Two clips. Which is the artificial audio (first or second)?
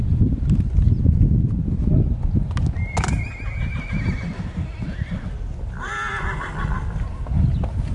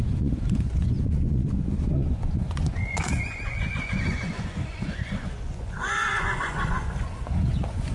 second